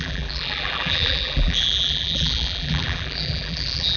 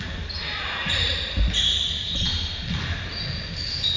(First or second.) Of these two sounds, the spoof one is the first